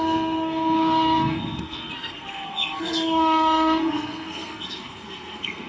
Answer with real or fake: fake